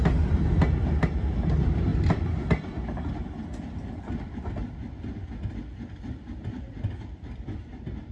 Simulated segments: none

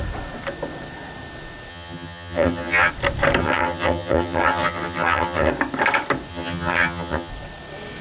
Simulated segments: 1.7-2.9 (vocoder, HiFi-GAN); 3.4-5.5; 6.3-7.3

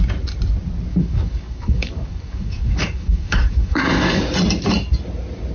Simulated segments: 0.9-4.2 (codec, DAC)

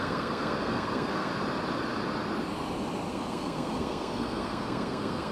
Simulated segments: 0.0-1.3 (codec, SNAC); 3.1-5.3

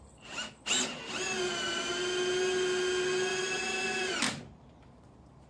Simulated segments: 3.3-4.2 (vocoder, BigVGAN v2)

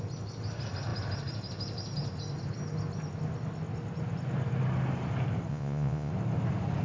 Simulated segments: 5.5-6.1 (vocoder, Vocos)

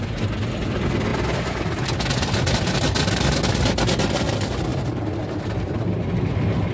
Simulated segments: none